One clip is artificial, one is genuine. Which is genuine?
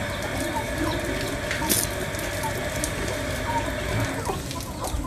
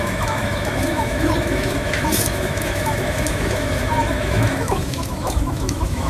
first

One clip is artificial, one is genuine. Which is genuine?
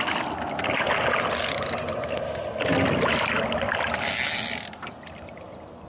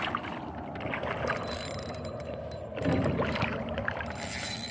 first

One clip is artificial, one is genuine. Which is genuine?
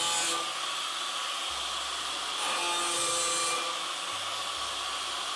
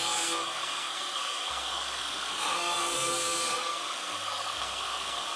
first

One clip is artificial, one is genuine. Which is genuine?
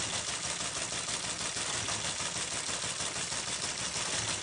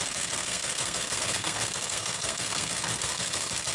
first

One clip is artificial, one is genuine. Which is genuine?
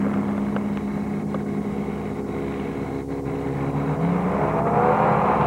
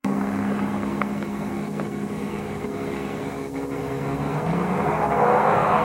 first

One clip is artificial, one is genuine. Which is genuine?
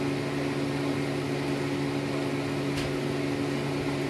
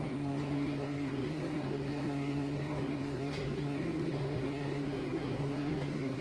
first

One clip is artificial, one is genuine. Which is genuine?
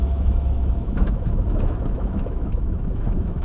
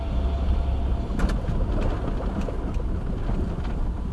second